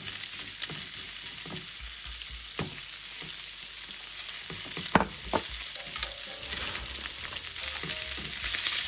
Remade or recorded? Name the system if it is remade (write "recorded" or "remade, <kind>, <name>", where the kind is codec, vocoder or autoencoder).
recorded